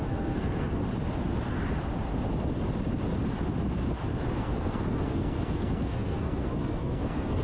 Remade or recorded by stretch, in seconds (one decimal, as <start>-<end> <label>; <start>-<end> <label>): 0.0-0.8 remade; 0.8-4.4 recorded; 4.4-7.4 remade